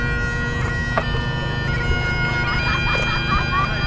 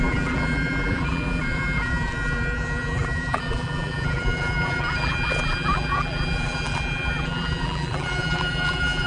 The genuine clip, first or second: first